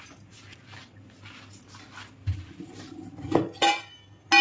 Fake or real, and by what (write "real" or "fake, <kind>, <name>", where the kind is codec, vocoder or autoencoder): real